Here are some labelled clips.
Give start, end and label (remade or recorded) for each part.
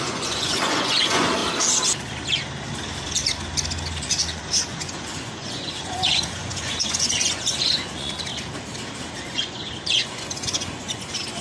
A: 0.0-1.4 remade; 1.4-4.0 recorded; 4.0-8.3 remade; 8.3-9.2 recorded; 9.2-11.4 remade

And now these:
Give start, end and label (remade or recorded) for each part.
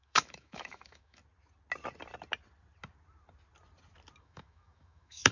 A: 0.0-1.2 remade; 1.2-4.2 recorded; 4.2-5.3 remade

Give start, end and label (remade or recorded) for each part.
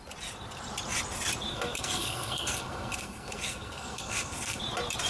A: 0.0-1.5 recorded; 1.5-4.6 remade; 4.6-5.1 recorded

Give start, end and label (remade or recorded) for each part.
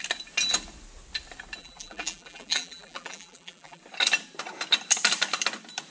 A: 0.0-1.6 recorded; 1.6-3.8 remade; 3.8-5.9 recorded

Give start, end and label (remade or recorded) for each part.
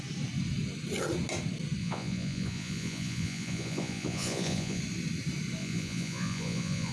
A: 0.0-1.8 recorded; 1.8-4.8 remade; 4.8-5.6 recorded; 5.6-6.9 remade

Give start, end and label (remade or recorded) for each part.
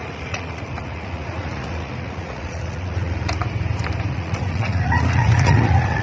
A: 0.0-3.4 remade; 3.4-4.1 recorded; 4.1-6.0 remade